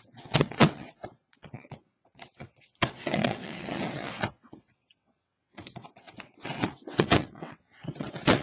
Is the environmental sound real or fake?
fake